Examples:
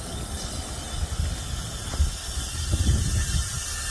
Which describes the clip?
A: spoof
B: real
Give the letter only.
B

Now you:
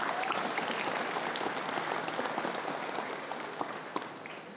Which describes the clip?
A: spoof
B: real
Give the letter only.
B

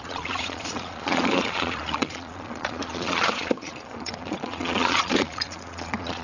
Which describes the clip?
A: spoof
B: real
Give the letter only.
A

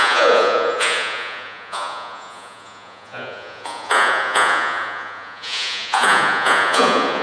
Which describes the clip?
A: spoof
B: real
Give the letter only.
A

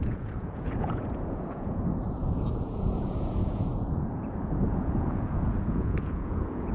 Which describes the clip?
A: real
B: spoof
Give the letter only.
B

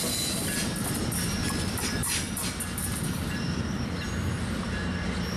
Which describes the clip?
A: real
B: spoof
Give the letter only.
A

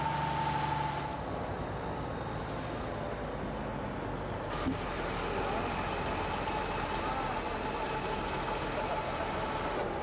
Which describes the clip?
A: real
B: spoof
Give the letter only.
A